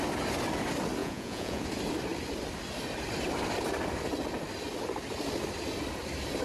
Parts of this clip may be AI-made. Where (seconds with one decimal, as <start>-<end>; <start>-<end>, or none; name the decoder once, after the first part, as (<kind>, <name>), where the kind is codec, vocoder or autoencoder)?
1.0-1.6 (vocoder, Vocos)